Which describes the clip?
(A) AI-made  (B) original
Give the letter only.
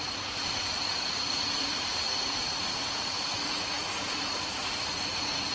A